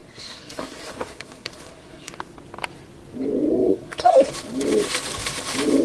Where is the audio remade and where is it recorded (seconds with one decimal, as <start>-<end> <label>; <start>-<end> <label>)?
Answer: 0.0-2.1 remade; 2.1-3.5 recorded; 3.5-4.3 remade; 4.3-5.8 recorded